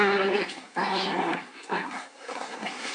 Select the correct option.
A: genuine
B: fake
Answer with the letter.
B